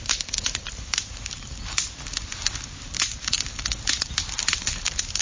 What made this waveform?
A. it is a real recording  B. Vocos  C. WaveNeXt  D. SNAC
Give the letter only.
A